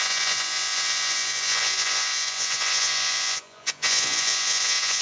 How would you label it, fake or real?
fake